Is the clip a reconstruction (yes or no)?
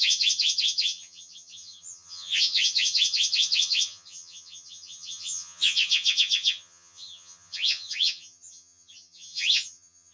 yes